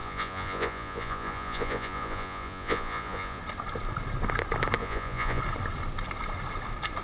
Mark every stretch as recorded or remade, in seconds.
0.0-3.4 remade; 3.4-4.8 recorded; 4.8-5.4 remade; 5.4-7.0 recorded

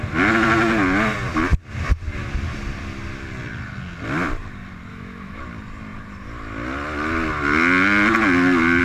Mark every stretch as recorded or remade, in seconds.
0.0-4.9 recorded; 4.9-5.4 remade; 5.4-8.8 recorded

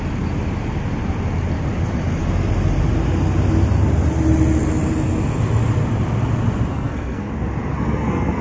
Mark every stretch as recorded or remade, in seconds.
0.0-6.7 recorded; 6.7-7.3 remade; 7.3-7.7 recorded; 7.7-8.4 remade

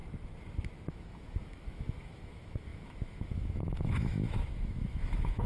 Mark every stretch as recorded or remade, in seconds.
0.0-0.9 recorded; 0.9-5.5 remade

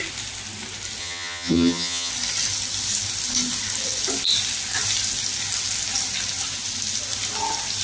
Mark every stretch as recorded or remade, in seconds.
0.0-1.0 recorded; 1.0-2.1 remade; 2.1-7.8 recorded

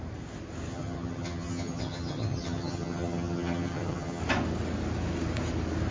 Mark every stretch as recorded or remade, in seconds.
0.0-0.7 recorded; 0.7-4.2 remade; 4.2-5.9 recorded

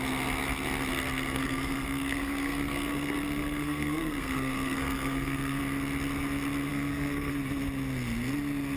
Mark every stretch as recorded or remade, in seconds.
0.0-0.9 recorded; 0.9-5.6 remade; 5.6-6.7 recorded; 6.7-7.3 remade; 7.3-8.8 recorded